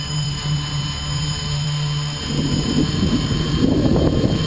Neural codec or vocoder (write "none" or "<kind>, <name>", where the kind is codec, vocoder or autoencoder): vocoder, BigVGAN v2